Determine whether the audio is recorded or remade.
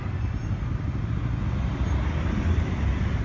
recorded